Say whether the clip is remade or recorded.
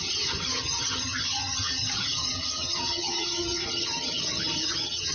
remade